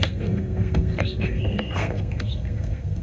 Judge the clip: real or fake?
fake